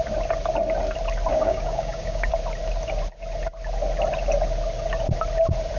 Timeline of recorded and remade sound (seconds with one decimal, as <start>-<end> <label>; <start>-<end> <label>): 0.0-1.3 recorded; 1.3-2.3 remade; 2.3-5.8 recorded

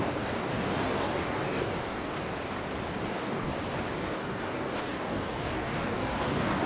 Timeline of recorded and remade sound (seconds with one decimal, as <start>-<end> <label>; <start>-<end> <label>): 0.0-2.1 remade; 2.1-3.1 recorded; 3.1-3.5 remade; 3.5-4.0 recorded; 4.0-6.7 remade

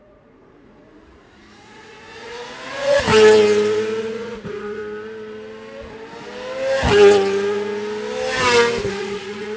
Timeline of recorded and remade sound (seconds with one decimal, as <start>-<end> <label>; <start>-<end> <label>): 0.0-3.1 remade; 3.1-4.0 recorded; 4.0-4.8 remade; 4.8-8.9 recorded; 8.9-9.6 remade

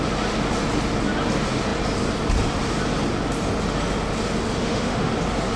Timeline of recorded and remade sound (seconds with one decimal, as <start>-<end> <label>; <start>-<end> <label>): 0.0-4.6 recorded; 4.6-5.1 remade; 5.1-5.6 recorded